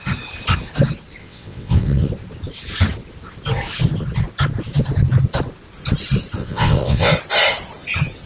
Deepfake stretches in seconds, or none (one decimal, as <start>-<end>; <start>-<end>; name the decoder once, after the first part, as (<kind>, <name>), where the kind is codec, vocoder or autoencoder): 1.2-2.1 (vocoder, WaveNeXt); 6.4-7.1